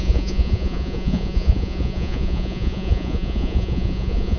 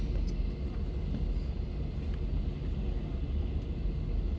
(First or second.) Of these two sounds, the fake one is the first